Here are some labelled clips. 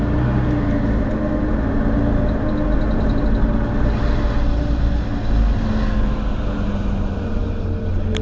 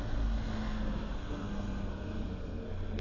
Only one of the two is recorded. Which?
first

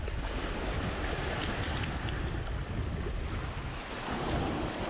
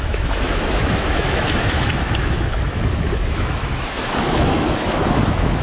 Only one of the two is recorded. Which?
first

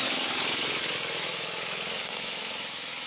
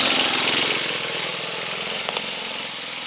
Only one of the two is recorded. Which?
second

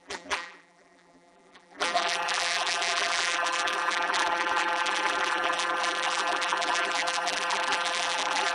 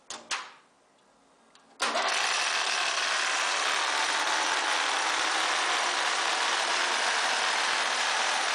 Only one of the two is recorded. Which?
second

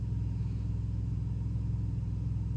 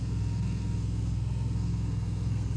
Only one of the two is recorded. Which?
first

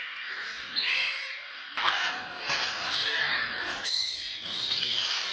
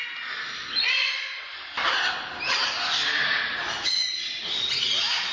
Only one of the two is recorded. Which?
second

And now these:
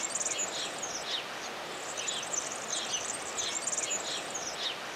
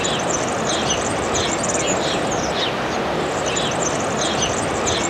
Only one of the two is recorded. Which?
first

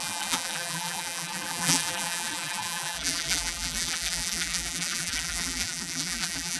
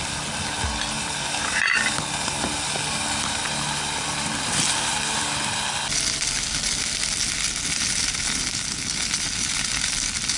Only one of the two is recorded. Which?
second